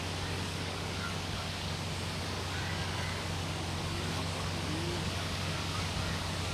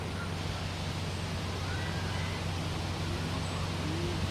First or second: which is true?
second